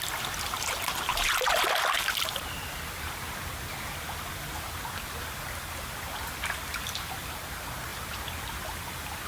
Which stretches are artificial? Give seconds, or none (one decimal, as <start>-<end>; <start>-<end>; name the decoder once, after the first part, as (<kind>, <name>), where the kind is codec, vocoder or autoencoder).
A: none